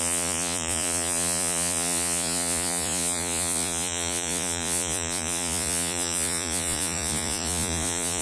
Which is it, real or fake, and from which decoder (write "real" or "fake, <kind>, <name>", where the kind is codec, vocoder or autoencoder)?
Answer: fake, vocoder, Vocos